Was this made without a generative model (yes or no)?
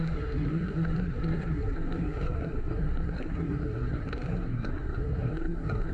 no